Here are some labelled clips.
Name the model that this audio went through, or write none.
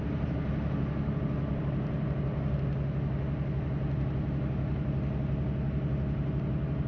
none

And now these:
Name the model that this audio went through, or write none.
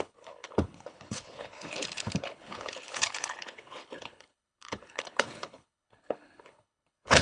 codec, HILCodec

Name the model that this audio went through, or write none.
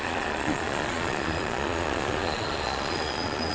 vocoder, Vocos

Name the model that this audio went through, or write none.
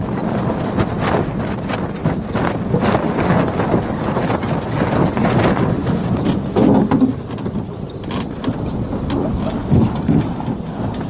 none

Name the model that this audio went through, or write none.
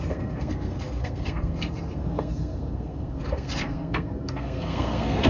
codec, SNAC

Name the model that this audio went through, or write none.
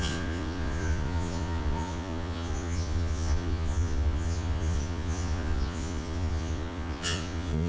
vocoder, Vocos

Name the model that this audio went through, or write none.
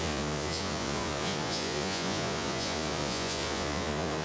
vocoder, Vocos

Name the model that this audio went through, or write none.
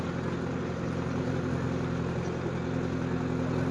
none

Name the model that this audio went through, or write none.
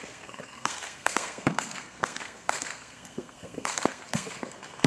codec, SNAC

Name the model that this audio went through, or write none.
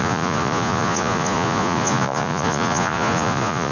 vocoder, Vocos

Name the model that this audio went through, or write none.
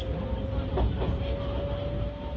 none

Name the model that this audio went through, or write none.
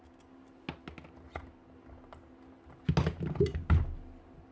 none